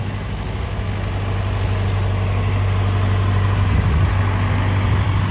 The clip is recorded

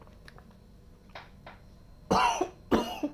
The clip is recorded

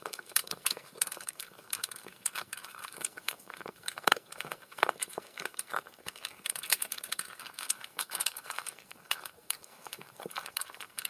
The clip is remade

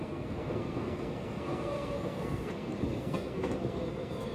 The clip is remade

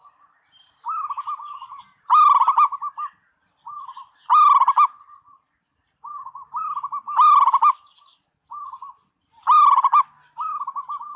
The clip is recorded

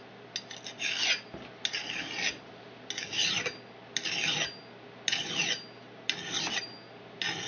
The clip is recorded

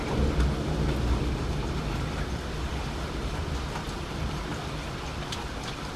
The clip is recorded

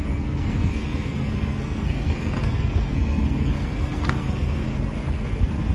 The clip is remade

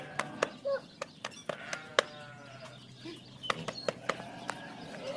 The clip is recorded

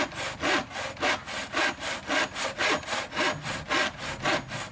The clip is recorded